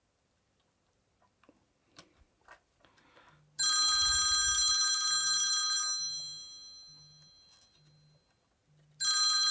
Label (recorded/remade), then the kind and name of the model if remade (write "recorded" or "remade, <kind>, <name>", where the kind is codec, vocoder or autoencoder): recorded